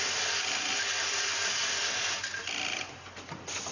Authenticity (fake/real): real